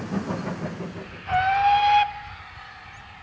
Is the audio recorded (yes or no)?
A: yes